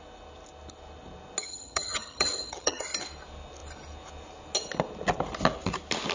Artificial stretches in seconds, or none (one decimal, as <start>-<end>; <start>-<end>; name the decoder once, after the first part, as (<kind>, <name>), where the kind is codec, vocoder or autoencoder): 1.5-2.8 (vocoder, HiFi-GAN)